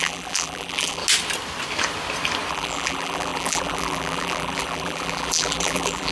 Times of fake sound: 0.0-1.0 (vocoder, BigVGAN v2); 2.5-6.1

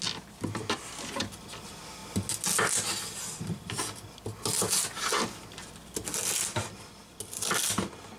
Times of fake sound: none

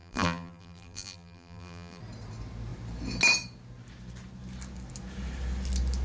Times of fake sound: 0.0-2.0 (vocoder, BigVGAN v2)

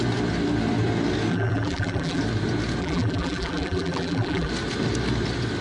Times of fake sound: 1.3-2.2 (vocoder, BigVGAN v2); 2.8-4.5

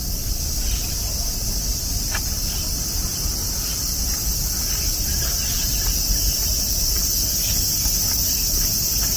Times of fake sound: 5.9-6.6 (vocoder, BigVGAN v2)

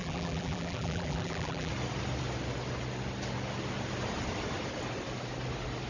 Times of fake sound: 0.0-1.7 (vocoder, BigVGAN v2)